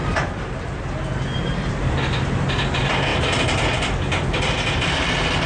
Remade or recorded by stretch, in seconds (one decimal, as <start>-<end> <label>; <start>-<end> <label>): 0.0-1.7 remade; 1.7-5.5 recorded